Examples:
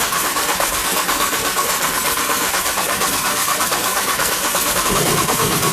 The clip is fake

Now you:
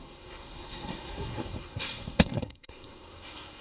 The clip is fake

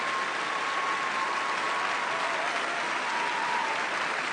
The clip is real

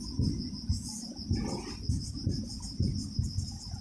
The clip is real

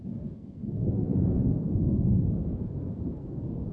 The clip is fake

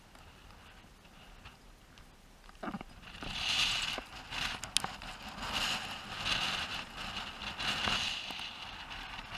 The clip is real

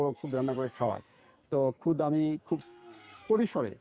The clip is fake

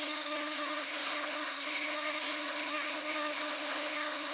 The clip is fake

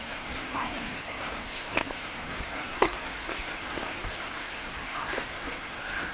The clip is fake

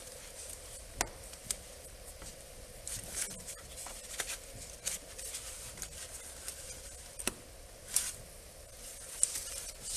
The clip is real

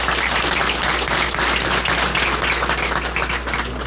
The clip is real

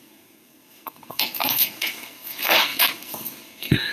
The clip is fake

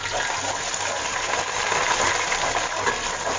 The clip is real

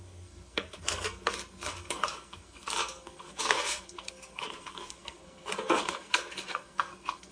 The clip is fake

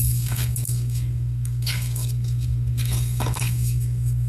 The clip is fake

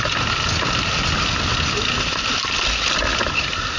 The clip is real